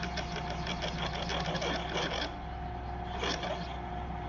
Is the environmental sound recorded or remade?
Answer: recorded